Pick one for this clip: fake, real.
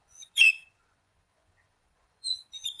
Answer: fake